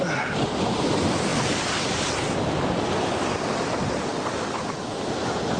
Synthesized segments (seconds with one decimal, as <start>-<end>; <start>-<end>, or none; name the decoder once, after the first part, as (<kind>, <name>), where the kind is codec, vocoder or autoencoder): 0.0-4.1 (vocoder, BigVGAN v2); 4.8-5.6